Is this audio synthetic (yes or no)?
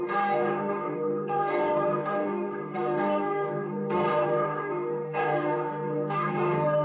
yes